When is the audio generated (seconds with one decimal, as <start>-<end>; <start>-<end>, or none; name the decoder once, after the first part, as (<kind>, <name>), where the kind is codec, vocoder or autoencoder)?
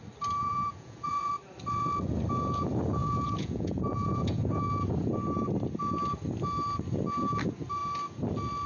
0.4-1.3 (vocoder, Vocos); 3.0-4.6